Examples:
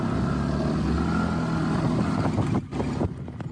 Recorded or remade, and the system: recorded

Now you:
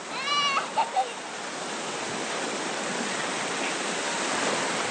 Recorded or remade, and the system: recorded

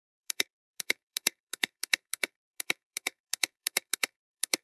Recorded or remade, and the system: remade, codec, SNAC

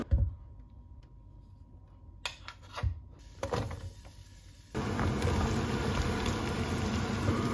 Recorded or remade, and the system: recorded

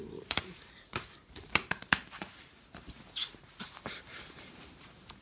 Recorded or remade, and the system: remade, vocoder, BigVGAN v2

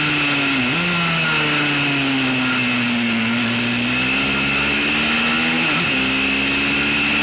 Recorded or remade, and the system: recorded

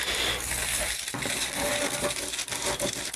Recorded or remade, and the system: recorded